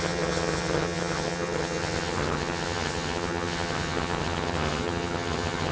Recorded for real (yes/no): no